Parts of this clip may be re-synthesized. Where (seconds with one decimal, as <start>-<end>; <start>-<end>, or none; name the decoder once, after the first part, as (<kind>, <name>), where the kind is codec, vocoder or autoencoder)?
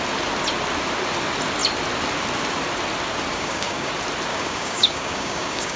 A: 3.3-3.9 (codec, DAC); 4.3-5.8